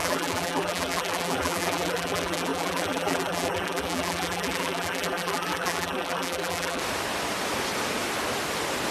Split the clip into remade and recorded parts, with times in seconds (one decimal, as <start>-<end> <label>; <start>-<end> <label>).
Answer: 0.0-6.8 remade; 6.8-8.9 recorded